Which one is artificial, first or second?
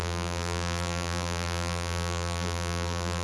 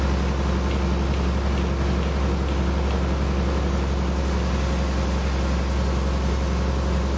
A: first